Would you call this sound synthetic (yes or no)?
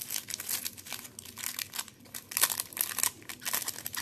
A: no